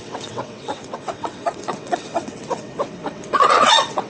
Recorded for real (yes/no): no